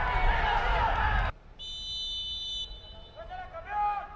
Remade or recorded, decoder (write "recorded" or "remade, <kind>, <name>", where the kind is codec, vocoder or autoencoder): recorded